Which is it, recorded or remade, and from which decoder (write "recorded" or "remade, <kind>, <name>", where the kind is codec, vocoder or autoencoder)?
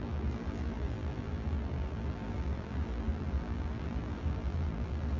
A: remade, vocoder, BigVGAN v2